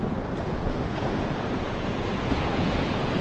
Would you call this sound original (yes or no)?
no